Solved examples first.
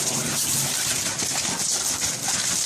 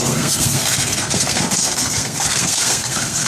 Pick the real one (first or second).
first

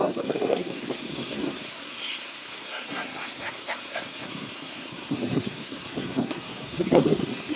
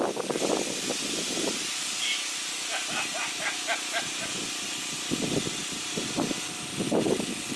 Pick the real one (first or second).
second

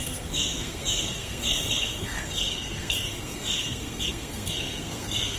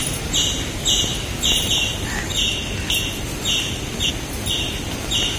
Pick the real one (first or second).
second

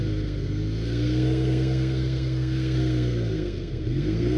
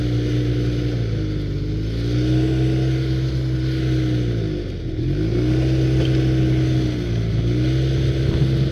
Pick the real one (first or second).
second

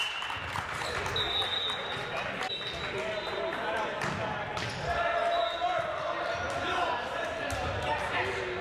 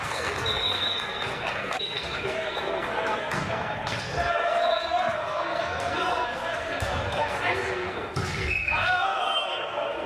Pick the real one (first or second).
first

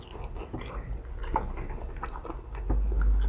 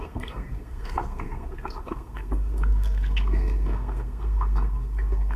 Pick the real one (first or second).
first